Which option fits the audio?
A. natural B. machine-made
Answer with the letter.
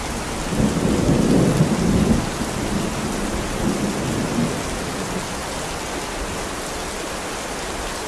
A